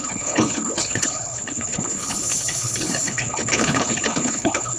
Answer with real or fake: fake